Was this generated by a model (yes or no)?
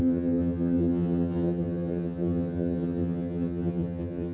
yes